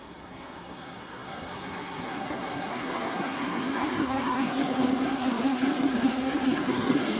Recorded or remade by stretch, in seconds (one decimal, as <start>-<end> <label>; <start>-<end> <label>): 0.0-7.2 remade